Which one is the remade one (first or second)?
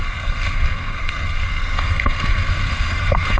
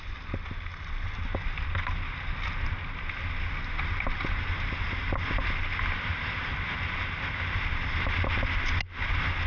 first